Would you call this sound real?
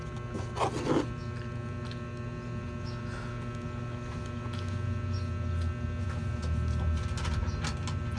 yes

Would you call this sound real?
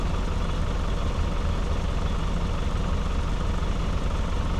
yes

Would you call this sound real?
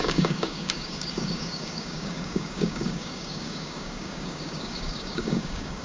no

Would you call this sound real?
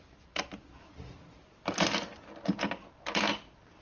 yes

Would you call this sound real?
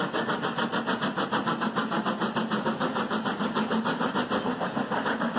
yes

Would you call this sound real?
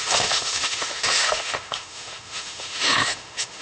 no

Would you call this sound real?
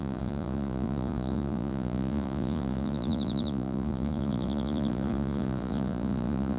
no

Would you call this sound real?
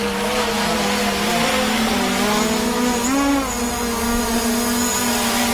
yes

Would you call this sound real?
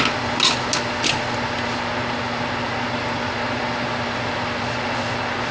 yes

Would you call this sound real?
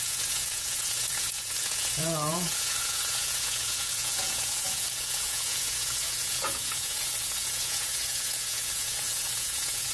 no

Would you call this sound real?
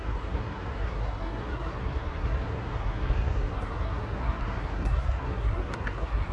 no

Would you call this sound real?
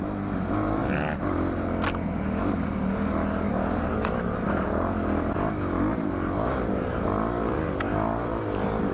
yes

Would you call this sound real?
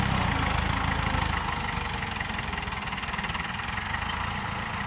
yes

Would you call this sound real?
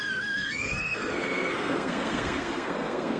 no